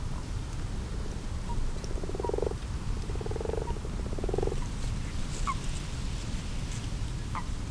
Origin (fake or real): real